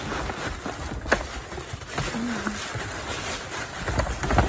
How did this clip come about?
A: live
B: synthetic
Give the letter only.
A